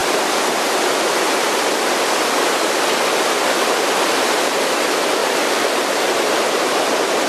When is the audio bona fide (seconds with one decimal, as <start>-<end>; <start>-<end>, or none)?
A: 0.0-5.2; 6.8-7.3